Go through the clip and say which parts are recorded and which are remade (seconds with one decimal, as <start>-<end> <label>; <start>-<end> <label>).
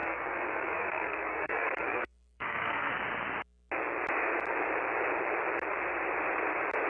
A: 0.0-2.9 remade; 2.9-6.9 recorded